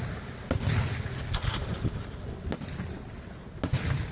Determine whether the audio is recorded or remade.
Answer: recorded